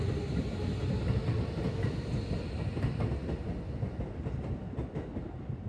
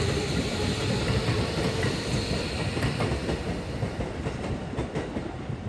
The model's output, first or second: second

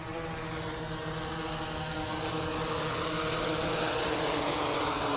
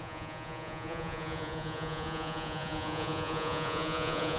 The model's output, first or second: second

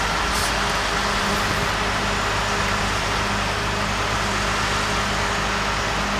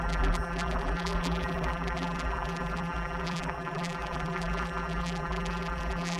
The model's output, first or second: second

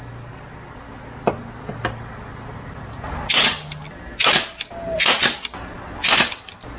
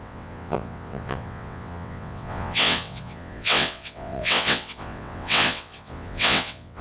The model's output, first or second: second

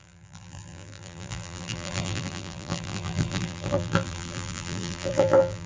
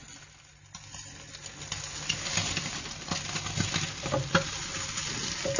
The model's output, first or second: first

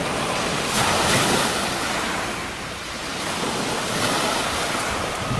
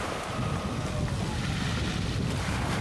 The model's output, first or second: first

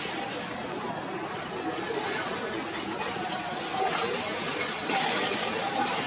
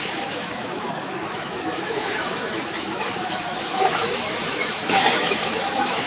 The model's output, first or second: second